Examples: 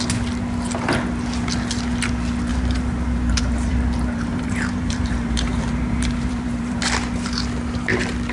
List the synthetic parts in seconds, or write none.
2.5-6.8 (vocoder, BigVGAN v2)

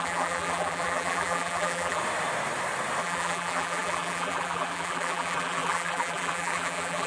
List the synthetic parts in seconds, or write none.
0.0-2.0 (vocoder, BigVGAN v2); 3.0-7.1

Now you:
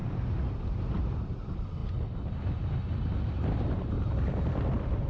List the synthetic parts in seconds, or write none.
0.6-1.8 (vocoder, BigVGAN v2); 3.3-5.1

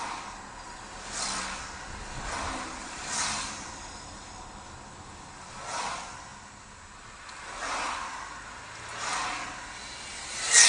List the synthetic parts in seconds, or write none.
2.8-4.3 (vocoder, BigVGAN v2)

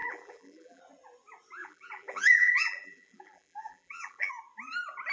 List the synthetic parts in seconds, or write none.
0.0-0.8 (vocoder, BigVGAN v2); 1.6-4.3